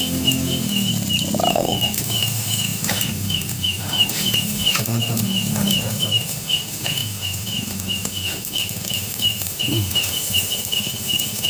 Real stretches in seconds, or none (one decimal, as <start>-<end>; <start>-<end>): 0.9-1.5